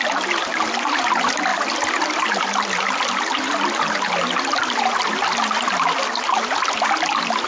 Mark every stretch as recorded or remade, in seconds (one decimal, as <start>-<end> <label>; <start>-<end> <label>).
0.0-7.5 recorded